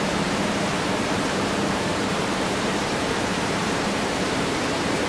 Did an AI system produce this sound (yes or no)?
yes